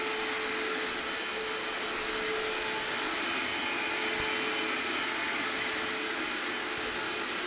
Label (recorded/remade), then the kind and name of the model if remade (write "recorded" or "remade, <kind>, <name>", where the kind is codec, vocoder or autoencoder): recorded